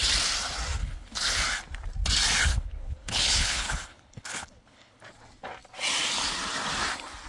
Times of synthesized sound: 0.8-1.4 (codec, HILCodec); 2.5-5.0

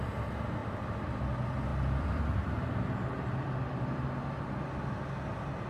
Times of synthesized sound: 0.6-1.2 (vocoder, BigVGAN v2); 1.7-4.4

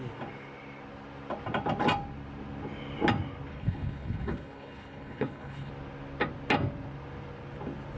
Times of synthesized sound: 3.5-5.7 (codec, HILCodec)

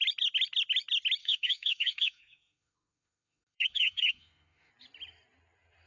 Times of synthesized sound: 1.2-4.7 (autoencoder, DAC-VAE)